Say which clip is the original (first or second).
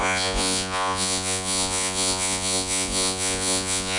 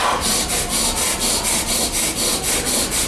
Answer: second